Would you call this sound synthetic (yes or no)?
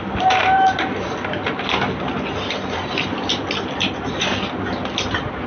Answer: no